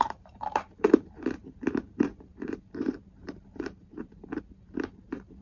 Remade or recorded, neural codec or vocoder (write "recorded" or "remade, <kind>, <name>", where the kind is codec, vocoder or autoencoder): remade, vocoder, BigVGAN v2